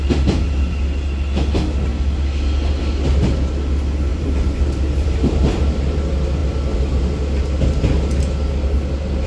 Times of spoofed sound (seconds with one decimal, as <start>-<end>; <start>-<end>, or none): 4.1-6.0